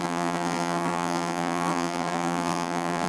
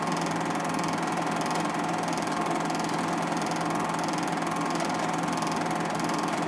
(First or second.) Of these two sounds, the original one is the second